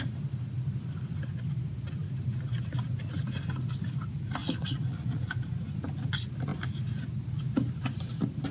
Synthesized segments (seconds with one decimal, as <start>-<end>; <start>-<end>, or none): 4.4-5.3